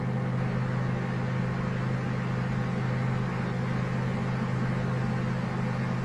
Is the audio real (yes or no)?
yes